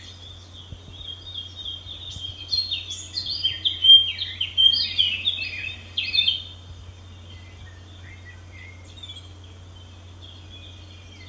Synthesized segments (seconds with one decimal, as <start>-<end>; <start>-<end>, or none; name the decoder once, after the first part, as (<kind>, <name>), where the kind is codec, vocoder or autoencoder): none